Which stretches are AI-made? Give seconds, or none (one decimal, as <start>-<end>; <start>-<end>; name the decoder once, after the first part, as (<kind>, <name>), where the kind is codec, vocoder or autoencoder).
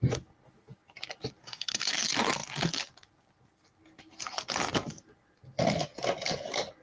1.4-1.9 (codec, SNAC)